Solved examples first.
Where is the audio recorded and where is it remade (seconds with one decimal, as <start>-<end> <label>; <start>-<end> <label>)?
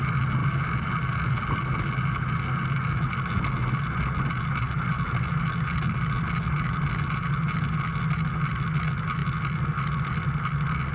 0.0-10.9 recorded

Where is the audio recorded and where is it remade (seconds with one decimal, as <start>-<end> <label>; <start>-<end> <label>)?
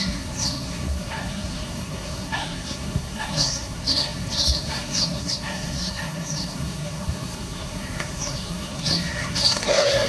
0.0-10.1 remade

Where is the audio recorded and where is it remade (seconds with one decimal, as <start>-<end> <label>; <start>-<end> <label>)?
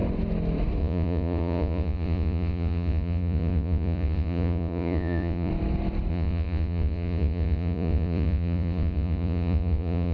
0.0-0.8 recorded; 0.8-5.5 remade; 5.5-6.1 recorded; 6.1-10.1 remade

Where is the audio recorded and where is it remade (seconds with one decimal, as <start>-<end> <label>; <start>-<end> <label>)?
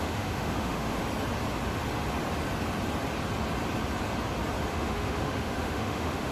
0.0-1.0 remade; 1.0-4.7 recorded; 4.7-6.3 remade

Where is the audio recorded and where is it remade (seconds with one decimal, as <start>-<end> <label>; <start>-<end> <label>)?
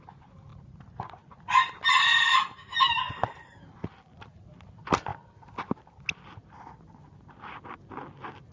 0.0-8.5 recorded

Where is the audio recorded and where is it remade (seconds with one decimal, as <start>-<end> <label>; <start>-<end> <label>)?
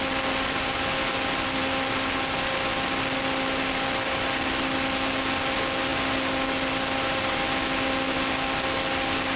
0.0-9.4 recorded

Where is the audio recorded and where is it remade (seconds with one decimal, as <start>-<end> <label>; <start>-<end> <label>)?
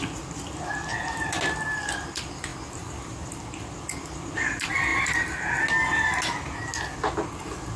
0.0-7.8 recorded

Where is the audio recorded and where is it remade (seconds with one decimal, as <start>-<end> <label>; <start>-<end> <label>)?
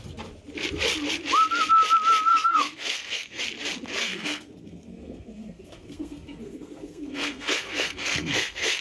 0.0-2.3 recorded; 2.3-3.4 remade; 3.4-4.0 recorded; 4.0-8.8 remade